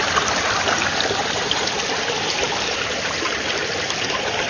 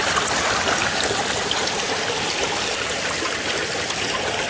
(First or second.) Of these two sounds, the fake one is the first